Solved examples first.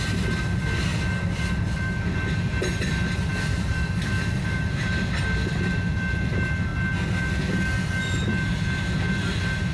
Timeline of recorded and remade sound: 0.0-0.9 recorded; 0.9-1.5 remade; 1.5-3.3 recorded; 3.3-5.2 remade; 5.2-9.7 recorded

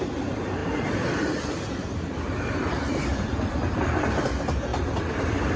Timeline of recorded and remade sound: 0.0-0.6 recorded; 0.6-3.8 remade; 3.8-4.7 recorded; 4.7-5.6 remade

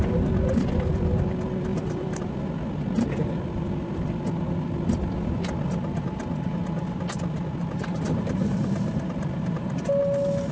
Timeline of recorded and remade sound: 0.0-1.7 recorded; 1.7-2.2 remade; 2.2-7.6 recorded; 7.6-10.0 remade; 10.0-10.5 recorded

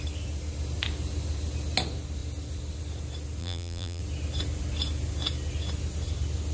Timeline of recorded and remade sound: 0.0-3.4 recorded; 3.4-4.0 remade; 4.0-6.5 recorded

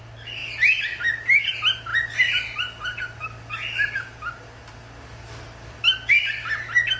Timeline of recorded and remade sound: 0.0-7.0 recorded

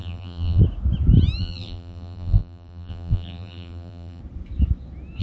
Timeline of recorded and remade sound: 0.0-0.6 remade; 0.6-1.4 recorded; 1.4-4.2 remade; 4.2-5.2 recorded

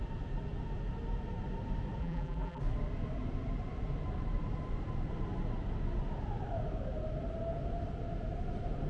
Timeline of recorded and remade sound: 0.0-2.0 recorded; 2.0-2.6 remade; 2.6-8.9 recorded

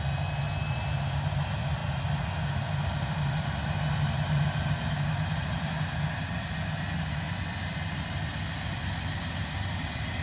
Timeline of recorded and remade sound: 0.0-10.2 recorded